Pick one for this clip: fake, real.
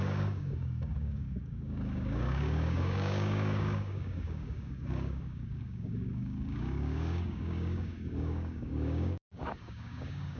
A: fake